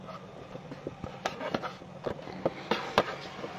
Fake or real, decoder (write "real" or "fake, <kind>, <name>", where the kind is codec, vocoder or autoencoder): real